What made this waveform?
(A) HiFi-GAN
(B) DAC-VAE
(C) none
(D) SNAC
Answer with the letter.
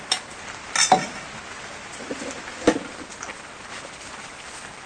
C